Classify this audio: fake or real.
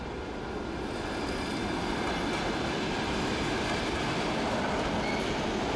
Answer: real